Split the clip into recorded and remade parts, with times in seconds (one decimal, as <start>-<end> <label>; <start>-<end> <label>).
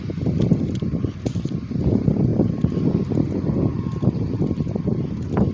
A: 0.0-5.5 recorded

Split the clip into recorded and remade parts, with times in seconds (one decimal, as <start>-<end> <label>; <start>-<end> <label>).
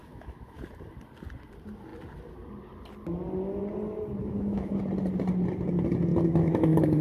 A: 0.0-0.6 remade; 0.6-4.2 recorded; 4.2-4.8 remade; 4.8-6.1 recorded; 6.1-7.0 remade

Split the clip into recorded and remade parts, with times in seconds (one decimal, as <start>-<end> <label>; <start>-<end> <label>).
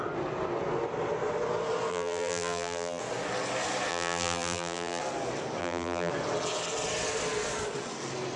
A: 0.0-1.9 recorded; 1.9-3.0 remade; 3.0-3.9 recorded; 3.9-5.0 remade; 5.0-5.6 recorded; 5.6-6.1 remade; 6.1-8.4 recorded